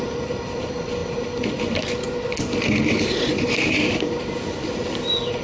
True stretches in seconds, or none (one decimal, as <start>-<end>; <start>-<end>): 0.0-5.4